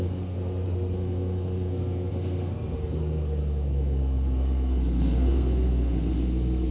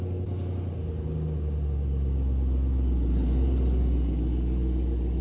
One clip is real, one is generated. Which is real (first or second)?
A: second